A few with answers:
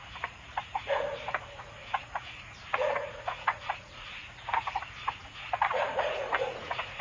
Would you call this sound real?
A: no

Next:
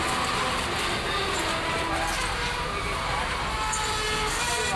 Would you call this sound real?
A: yes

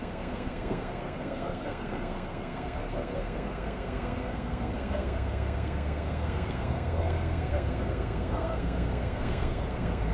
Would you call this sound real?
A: no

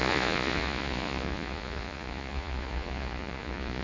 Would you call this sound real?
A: no